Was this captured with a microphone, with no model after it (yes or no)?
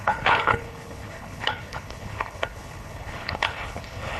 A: no